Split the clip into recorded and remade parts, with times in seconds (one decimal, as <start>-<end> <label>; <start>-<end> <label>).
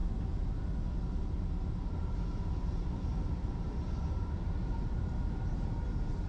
0.0-2.1 recorded; 2.1-3.1 remade; 3.1-3.6 recorded; 3.6-6.3 remade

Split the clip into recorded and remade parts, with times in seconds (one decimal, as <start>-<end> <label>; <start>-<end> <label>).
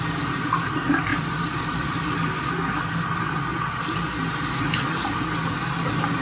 0.0-1.1 recorded; 1.1-2.5 remade; 2.5-3.5 recorded; 3.5-4.0 remade; 4.0-6.2 recorded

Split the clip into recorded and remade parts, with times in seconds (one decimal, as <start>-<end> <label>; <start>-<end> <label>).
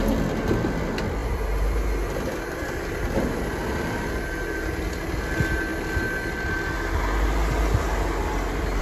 0.0-8.8 recorded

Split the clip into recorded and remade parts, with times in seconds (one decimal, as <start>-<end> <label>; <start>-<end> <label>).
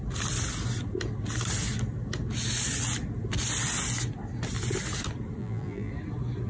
0.0-5.4 recorded; 5.4-5.9 remade; 5.9-6.5 recorded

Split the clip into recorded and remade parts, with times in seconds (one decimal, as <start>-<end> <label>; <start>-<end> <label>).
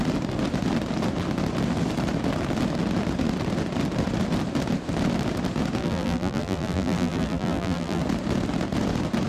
0.0-5.8 recorded; 5.8-8.0 remade; 8.0-9.3 recorded